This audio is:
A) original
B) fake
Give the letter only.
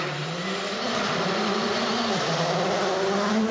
A